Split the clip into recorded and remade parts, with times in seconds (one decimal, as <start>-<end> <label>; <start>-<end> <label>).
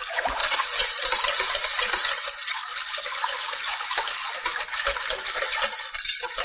0.0-0.4 recorded; 0.4-0.9 remade; 0.9-6.4 recorded